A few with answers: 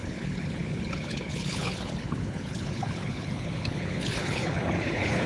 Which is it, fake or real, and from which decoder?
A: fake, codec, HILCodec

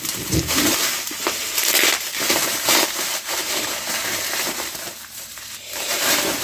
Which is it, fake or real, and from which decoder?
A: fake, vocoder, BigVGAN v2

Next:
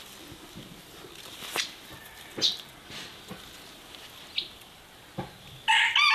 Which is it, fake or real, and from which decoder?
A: real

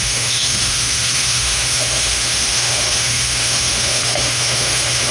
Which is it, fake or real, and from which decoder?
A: fake, autoencoder, DAC-VAE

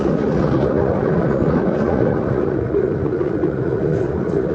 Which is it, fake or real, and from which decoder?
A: fake, vocoder, Vocos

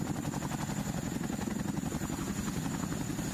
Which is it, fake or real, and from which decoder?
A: real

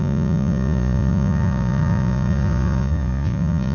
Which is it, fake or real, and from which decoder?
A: fake, vocoder, Vocos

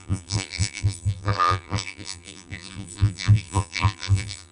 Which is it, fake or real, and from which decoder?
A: fake, vocoder, BigVGAN v2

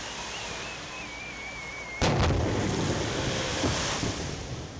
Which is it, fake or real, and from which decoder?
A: real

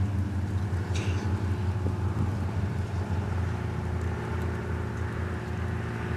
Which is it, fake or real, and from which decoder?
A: real